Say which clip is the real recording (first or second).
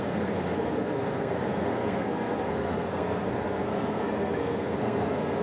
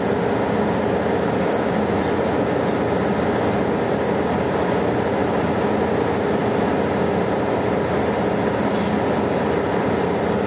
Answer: second